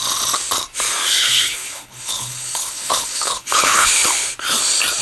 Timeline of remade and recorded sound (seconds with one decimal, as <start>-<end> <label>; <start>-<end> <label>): 0.0-1.2 recorded; 1.2-3.9 remade; 3.9-5.0 recorded